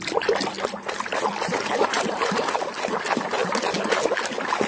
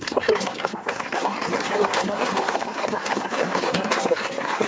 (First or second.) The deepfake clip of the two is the second